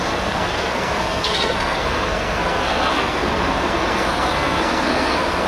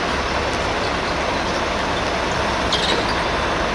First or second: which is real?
second